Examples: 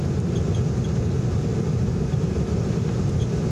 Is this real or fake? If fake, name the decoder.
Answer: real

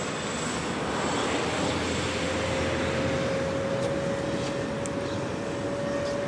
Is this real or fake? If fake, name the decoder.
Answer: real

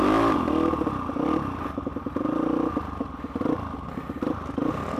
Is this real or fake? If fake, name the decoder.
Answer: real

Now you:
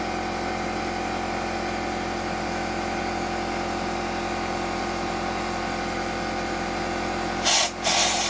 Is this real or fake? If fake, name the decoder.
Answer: real